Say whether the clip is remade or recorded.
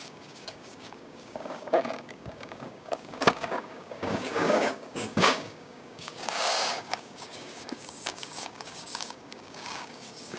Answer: remade